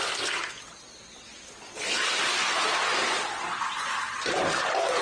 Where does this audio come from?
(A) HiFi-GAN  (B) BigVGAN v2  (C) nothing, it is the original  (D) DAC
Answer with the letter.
C